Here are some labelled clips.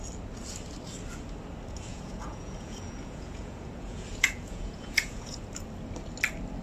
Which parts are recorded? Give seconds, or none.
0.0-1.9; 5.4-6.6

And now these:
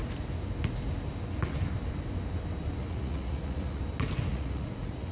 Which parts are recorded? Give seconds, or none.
0.0-2.8; 3.8-4.3

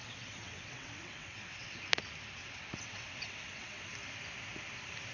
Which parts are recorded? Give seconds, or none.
1.8-2.4; 3.9-5.1